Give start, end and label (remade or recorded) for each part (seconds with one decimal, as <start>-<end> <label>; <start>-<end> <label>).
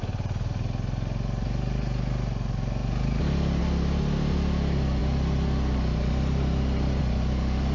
0.0-7.7 recorded